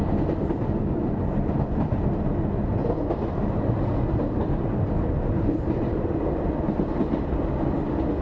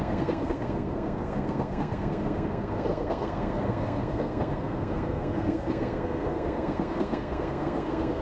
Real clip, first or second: first